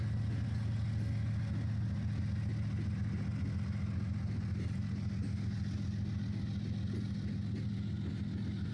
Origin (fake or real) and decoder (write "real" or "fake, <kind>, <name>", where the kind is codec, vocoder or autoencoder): real